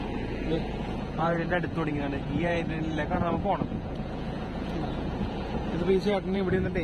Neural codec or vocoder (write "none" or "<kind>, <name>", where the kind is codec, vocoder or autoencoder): vocoder, Vocos